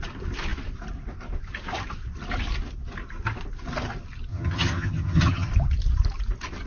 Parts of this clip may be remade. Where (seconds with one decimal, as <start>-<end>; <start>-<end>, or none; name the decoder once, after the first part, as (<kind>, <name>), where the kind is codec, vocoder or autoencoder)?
4.3-5.5 (vocoder, HiFi-GAN)